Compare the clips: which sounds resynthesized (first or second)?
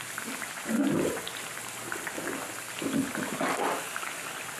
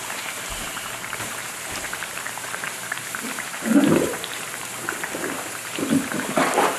second